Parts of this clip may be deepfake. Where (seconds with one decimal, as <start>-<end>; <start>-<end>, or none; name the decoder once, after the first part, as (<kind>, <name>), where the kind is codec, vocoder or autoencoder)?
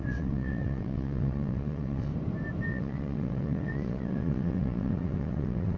0.0-2.1 (vocoder, WaveNeXt); 2.7-5.8